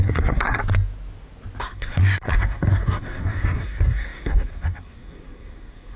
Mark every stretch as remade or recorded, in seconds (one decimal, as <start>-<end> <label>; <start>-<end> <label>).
0.0-0.6 remade; 0.6-1.6 recorded; 1.6-6.0 remade